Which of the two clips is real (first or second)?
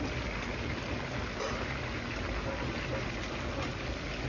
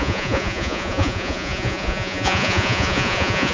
first